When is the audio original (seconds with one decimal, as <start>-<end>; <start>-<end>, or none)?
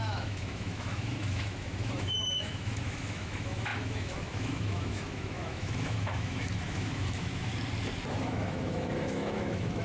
7.5-8.1